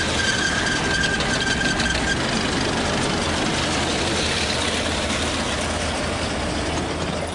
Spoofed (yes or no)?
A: no